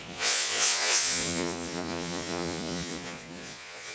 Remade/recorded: remade